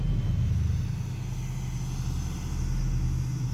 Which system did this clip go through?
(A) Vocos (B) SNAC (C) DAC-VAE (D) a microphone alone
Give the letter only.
D